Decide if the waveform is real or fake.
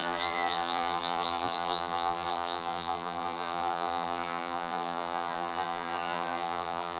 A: fake